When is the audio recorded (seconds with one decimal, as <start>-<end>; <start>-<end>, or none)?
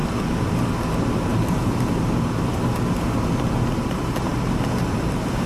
0.0-1.3; 1.9-5.5